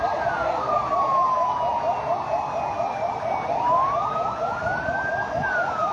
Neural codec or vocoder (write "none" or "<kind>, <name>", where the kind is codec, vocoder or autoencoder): none